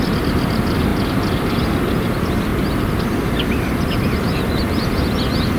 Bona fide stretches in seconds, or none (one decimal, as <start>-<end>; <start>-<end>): 0.0-5.6